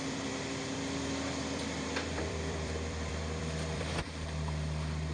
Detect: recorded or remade remade